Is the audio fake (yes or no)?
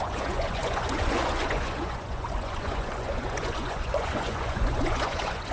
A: yes